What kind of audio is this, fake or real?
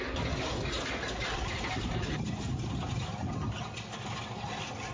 real